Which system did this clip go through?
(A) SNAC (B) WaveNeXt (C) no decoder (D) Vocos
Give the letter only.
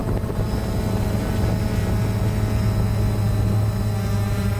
C